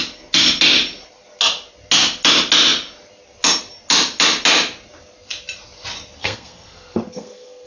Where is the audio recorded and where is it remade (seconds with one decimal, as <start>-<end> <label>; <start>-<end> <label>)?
0.0-6.2 recorded; 6.2-7.7 remade